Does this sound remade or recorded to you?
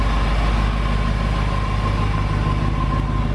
recorded